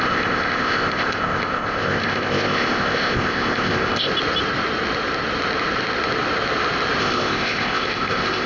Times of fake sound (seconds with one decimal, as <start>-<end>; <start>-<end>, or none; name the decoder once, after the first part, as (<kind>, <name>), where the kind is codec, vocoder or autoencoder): 0.0-4.1 (codec, ZipCodec); 7.0-8.5